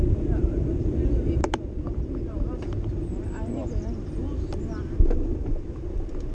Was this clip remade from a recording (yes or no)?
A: yes